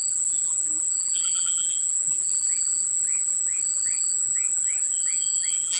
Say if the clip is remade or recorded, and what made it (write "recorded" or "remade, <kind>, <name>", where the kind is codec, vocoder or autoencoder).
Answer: remade, vocoder, BigVGAN v2